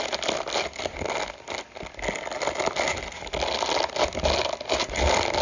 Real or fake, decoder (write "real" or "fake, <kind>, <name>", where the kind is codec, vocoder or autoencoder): real